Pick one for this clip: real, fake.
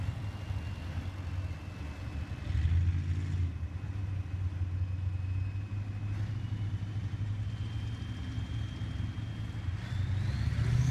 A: real